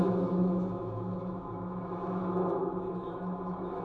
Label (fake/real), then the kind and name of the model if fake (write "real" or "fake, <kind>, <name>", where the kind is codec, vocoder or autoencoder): fake, autoencoder, DAC-VAE